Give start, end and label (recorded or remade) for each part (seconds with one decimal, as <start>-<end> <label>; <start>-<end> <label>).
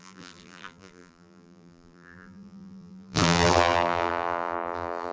0.0-5.1 remade